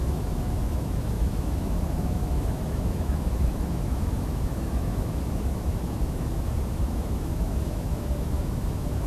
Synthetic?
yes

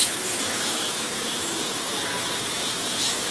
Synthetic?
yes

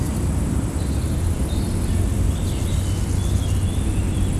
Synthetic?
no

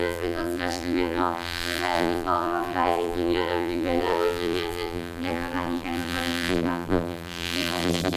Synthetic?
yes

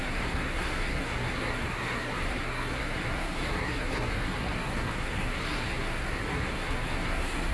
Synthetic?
yes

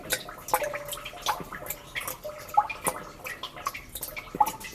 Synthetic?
no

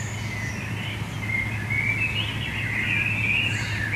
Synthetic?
no